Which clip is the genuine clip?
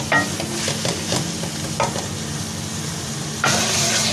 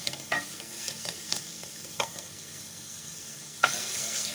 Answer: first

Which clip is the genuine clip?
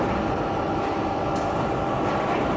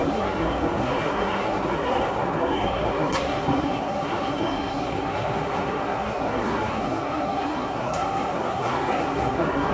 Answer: first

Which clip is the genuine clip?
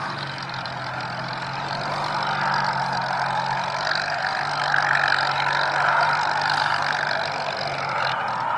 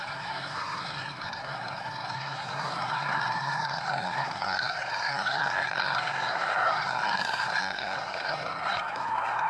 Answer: first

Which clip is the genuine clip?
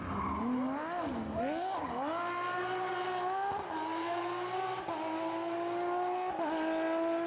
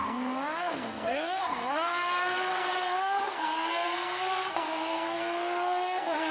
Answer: first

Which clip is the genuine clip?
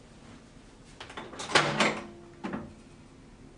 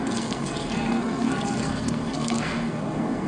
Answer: first